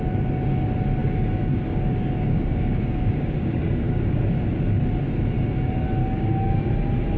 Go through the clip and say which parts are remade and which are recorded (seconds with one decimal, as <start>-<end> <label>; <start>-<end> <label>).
0.0-1.0 recorded; 1.0-4.4 remade; 4.4-6.0 recorded; 6.0-6.7 remade; 6.7-7.2 recorded